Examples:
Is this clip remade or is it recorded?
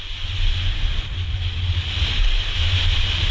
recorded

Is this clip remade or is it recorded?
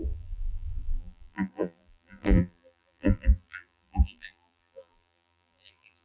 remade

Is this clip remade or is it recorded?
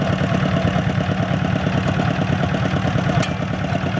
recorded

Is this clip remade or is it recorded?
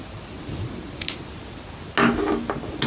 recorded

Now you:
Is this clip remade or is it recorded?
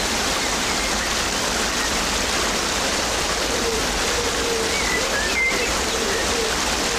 recorded